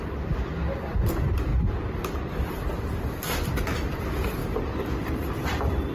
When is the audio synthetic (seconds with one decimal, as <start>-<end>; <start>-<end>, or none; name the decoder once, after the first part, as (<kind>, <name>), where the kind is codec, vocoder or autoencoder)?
0.0-1.5 (vocoder, BigVGAN v2); 2.3-5.9